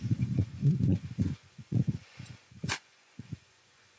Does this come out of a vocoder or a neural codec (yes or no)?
yes